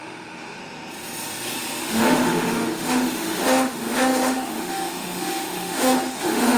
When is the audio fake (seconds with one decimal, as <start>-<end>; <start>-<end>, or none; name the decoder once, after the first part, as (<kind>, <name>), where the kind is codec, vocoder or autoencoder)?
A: 0.0-0.6 (autoencoder, DAC-VAE); 1.8-6.6

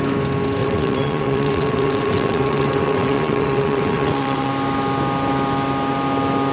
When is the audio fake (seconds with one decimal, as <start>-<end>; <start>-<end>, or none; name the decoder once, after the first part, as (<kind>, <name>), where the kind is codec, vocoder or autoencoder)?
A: 0.6-4.5 (vocoder, WaveNeXt)

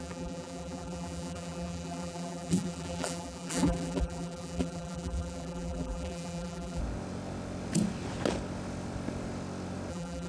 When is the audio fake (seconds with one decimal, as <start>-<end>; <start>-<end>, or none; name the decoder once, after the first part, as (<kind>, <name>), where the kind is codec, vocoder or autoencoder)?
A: 0.0-6.8 (vocoder, BigVGAN v2); 9.9-10.3

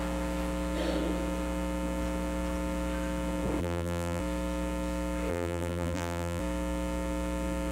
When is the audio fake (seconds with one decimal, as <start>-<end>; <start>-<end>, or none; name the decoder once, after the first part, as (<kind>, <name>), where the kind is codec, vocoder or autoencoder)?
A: 3.6-4.2 (vocoder, BigVGAN v2); 5.3-6.4